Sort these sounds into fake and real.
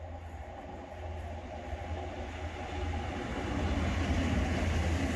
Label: real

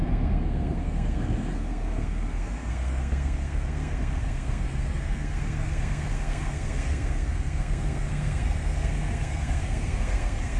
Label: fake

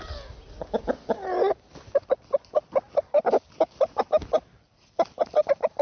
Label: real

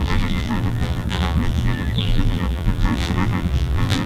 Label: fake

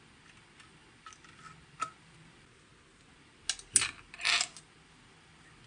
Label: real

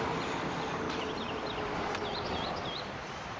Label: real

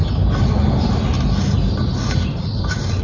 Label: real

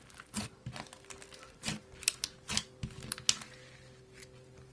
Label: real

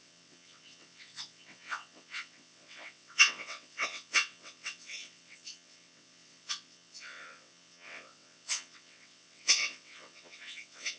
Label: fake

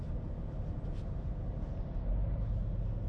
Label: real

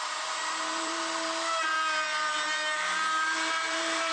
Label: fake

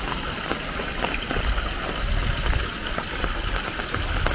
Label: real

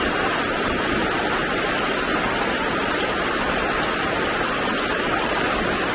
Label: real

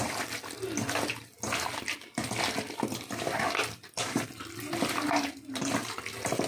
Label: real